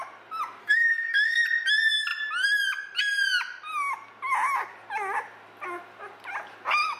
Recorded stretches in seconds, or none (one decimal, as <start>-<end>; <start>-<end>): 0.0-0.6; 1.4-7.0